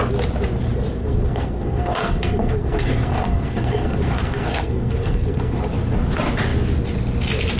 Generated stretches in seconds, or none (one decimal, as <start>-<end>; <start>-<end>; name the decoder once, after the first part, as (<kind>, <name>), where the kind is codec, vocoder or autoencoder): 1.0-5.6 (codec, SNAC)